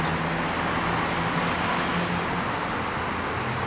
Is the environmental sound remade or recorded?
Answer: recorded